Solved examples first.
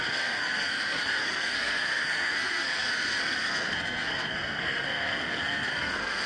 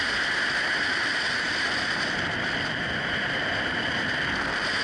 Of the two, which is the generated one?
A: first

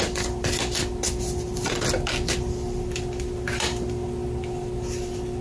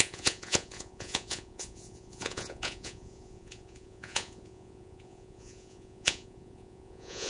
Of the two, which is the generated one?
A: second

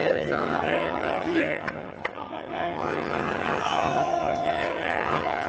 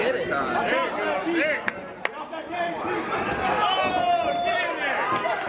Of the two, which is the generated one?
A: first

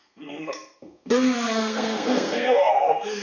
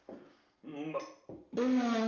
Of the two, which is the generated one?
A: first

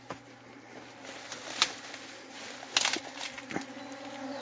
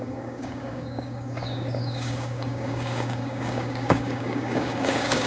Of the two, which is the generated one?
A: second